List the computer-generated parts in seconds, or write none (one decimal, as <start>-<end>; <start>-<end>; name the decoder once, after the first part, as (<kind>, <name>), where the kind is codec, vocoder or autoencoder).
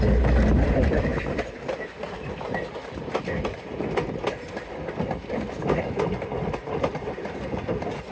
none